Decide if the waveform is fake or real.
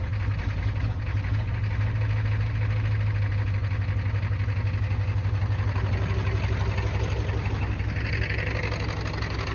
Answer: real